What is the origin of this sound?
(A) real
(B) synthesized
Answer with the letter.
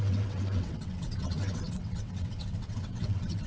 B